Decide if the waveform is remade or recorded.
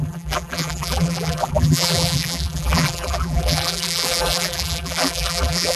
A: remade